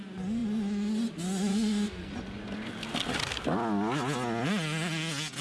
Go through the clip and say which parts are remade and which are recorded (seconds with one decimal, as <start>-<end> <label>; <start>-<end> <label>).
0.0-1.5 recorded; 1.5-2.1 remade; 2.1-5.4 recorded